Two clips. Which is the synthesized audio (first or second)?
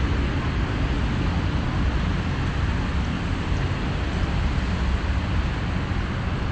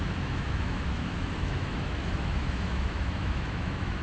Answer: second